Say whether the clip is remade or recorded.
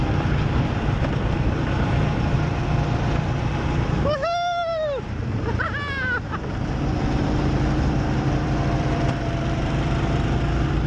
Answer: remade